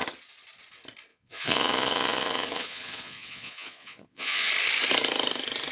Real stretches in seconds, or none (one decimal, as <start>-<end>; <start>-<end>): 0.0-1.1; 4.5-5.7